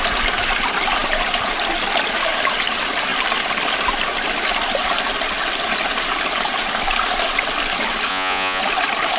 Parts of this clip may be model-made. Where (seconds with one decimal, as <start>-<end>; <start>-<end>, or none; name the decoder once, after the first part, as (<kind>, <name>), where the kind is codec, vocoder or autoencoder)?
8.1-8.6 (vocoder, Vocos)